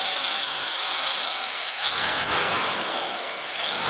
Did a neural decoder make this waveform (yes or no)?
yes